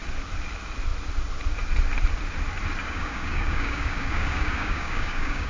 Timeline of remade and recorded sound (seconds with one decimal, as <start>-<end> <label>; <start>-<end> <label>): 0.0-2.8 recorded; 2.8-5.5 remade